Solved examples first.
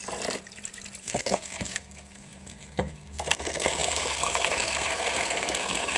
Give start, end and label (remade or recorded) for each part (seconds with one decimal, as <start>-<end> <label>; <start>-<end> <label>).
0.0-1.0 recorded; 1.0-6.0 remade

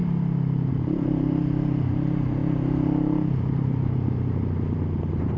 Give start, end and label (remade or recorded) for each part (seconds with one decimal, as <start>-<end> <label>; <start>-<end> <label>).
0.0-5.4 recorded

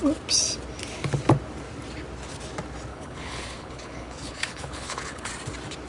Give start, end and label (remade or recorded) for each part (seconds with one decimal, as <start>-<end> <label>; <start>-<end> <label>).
0.0-2.9 recorded; 2.9-5.3 remade; 5.3-5.9 recorded

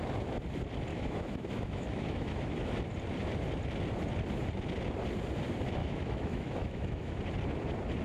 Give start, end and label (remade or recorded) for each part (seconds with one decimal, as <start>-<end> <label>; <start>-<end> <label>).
0.0-0.9 recorded; 0.9-2.8 remade; 2.8-5.8 recorded; 5.8-7.2 remade; 7.2-8.0 recorded

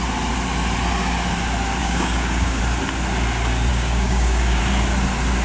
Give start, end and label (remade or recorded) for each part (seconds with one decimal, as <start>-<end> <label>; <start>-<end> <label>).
0.0-1.8 recorded; 1.8-2.6 remade; 2.6-3.7 recorded; 3.7-4.6 remade; 4.6-5.4 recorded

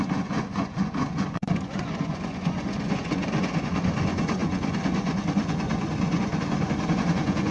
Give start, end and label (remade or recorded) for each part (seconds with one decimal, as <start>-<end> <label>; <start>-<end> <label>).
0.0-7.5 remade